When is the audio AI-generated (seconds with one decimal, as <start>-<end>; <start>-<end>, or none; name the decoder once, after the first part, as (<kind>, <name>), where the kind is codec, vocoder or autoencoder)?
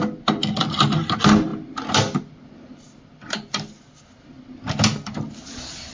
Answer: none